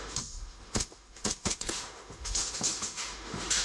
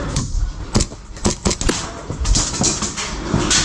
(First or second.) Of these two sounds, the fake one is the first